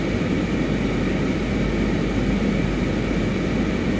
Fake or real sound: real